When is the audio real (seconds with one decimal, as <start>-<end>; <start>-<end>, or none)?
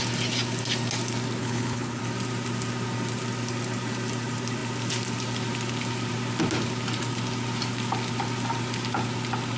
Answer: 0.0-1.4; 2.0-9.6